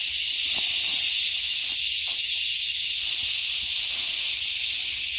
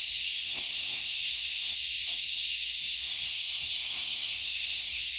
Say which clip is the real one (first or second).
first